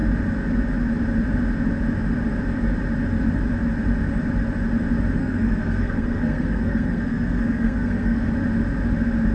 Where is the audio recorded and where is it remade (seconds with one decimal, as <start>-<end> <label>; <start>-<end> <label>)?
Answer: 0.0-5.2 recorded; 5.2-8.3 remade; 8.3-9.3 recorded